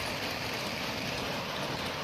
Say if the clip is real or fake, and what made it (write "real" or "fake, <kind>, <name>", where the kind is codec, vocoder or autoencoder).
real